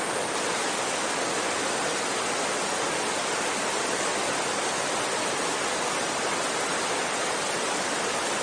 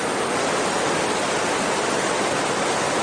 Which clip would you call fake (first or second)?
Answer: second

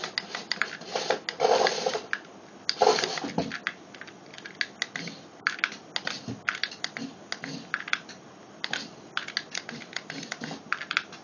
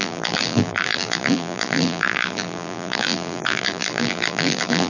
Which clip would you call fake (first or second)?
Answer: second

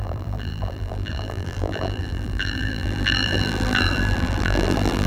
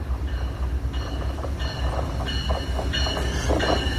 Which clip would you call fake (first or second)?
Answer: first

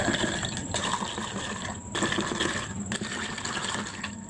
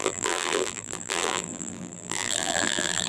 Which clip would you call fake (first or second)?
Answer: second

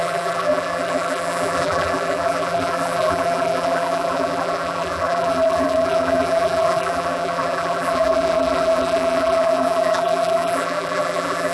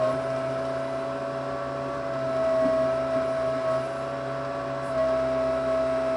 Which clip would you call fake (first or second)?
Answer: first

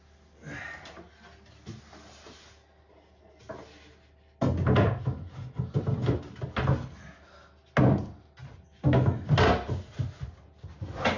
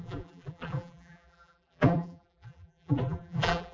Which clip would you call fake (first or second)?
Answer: second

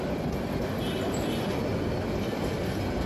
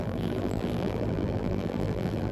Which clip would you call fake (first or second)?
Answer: second